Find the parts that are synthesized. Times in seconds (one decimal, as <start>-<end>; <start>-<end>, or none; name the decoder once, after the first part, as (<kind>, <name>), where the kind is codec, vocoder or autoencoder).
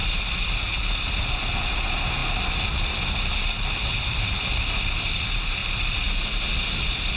0.0-0.6 (vocoder, BigVGAN v2); 5.6-6.5